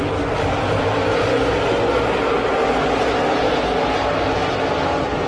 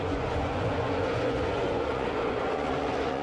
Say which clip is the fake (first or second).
second